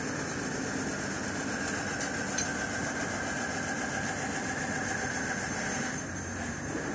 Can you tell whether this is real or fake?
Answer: real